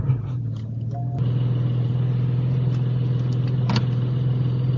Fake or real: real